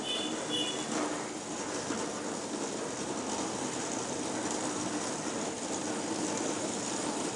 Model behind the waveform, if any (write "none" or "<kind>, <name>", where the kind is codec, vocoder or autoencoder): none